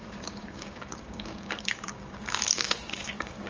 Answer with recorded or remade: remade